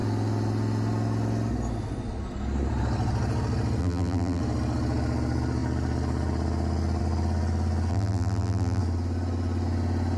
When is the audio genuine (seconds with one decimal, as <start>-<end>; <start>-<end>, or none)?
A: 0.0-3.8; 4.4-7.9; 8.8-10.2